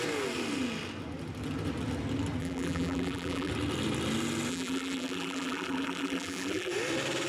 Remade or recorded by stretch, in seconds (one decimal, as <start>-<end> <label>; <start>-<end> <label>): 0.0-2.4 recorded; 2.4-3.5 remade; 3.5-4.5 recorded; 4.5-6.7 remade; 6.7-7.3 recorded